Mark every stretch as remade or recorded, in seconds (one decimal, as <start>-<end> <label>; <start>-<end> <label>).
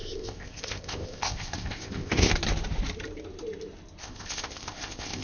0.0-2.3 remade; 2.3-4.0 recorded; 4.0-5.2 remade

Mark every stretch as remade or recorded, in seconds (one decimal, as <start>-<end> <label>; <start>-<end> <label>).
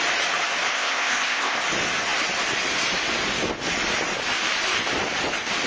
0.0-0.7 recorded; 0.7-1.6 remade; 1.6-5.7 recorded